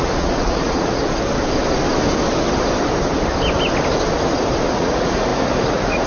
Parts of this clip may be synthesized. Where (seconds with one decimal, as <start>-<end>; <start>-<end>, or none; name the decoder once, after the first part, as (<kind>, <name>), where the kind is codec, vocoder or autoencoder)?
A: 0.0-1.0 (vocoder, Vocos); 4.7-6.1